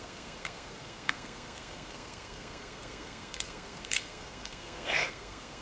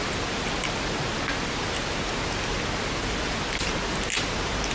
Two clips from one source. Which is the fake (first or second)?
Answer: first